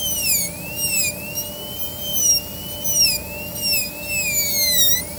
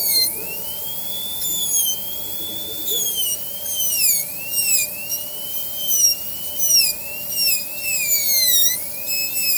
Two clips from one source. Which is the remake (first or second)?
second